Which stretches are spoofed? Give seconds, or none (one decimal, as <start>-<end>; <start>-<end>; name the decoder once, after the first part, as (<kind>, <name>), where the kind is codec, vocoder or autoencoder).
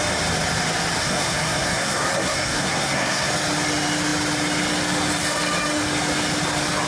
1.0-3.3 (codec, SNAC)